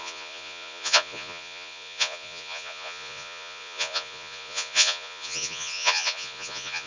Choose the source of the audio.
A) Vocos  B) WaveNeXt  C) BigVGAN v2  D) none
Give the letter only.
A